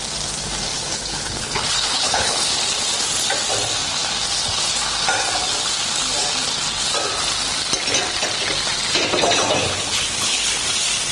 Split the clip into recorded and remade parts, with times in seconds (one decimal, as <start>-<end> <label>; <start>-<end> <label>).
0.0-0.7 recorded; 0.7-2.4 remade; 2.4-9.6 recorded; 9.6-10.6 remade; 10.6-11.1 recorded